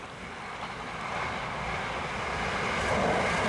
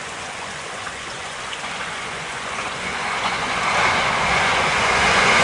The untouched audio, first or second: first